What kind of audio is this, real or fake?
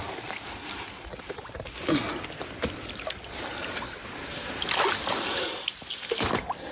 real